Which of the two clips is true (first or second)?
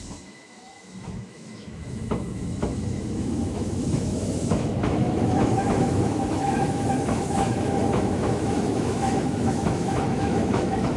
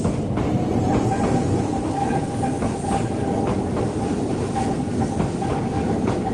second